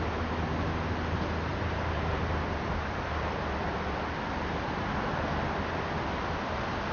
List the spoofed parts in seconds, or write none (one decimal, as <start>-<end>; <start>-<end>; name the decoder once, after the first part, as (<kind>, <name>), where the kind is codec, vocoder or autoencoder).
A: 1.5-5.6 (vocoder, BigVGAN v2)